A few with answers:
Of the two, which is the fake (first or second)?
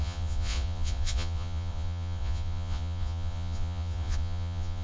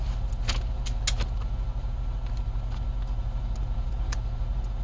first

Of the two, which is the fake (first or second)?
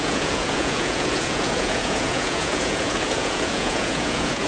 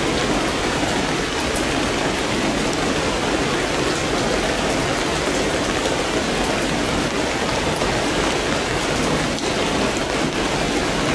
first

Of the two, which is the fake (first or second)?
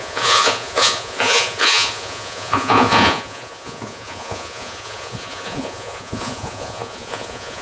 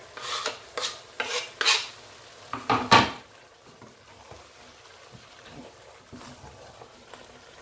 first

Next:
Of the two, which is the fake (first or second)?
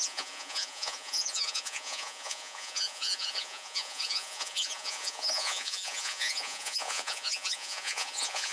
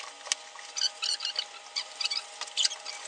first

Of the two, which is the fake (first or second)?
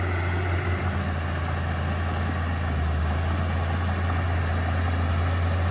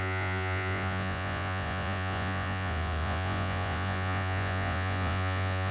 second